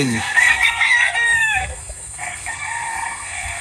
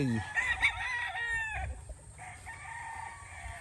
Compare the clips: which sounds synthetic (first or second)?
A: first